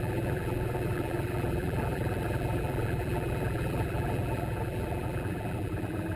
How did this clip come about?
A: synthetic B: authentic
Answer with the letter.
A